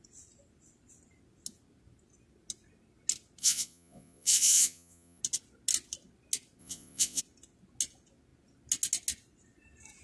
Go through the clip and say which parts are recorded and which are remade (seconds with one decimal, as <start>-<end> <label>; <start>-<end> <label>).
0.0-3.4 recorded; 3.4-5.2 remade; 5.2-6.6 recorded; 6.6-7.2 remade; 7.2-10.0 recorded